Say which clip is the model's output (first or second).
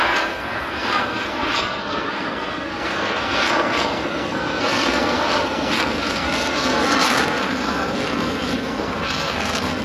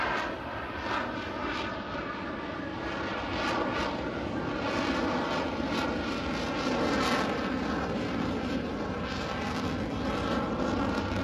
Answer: first